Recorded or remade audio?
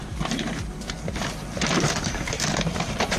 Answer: remade